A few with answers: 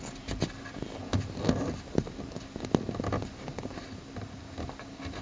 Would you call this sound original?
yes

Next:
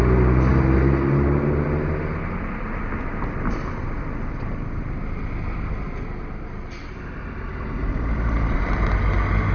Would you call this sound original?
yes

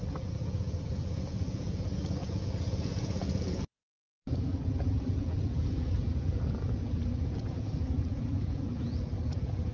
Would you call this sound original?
no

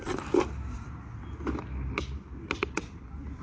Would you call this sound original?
yes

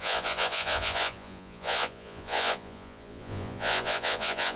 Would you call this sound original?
no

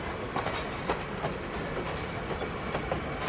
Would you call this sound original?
yes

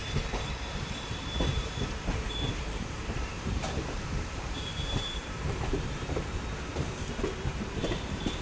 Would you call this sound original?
no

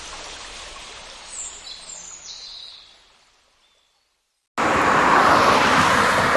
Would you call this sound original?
yes